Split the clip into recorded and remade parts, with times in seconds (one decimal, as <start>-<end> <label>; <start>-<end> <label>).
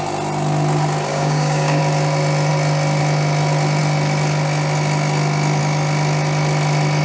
0.0-1.1 recorded; 1.1-1.8 remade; 1.8-7.0 recorded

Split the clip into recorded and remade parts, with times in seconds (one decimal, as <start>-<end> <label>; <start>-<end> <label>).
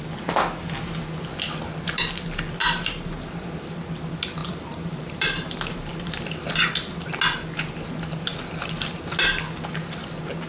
0.0-2.6 recorded; 2.6-3.6 remade; 3.6-4.4 recorded; 4.4-5.9 remade; 5.9-10.5 recorded